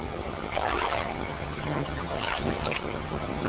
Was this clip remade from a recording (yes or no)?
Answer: yes